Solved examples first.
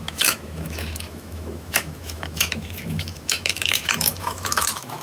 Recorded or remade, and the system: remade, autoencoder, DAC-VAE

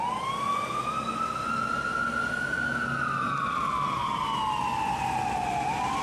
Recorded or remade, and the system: recorded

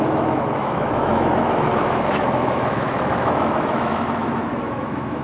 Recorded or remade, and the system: remade, autoencoder, DAC-VAE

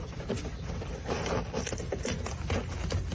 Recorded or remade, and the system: recorded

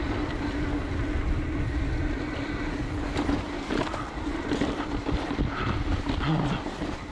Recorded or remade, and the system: recorded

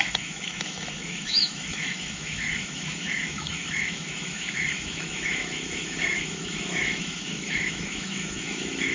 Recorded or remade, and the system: remade, autoencoder, DAC-VAE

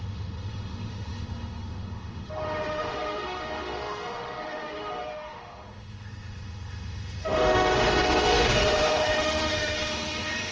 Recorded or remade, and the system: remade, autoencoder, DAC-VAE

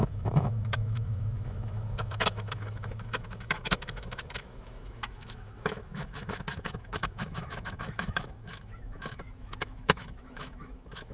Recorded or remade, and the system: remade, autoencoder, DAC-VAE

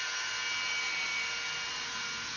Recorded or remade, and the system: recorded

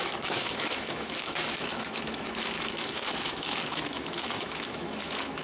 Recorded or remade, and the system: remade, autoencoder, DAC-VAE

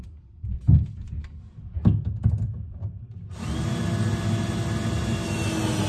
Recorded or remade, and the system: recorded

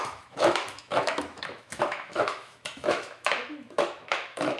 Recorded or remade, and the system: remade, autoencoder, DAC-VAE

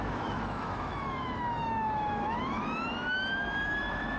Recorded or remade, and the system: remade, autoencoder, DAC-VAE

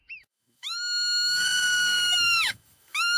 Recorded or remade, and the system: remade, autoencoder, DAC-VAE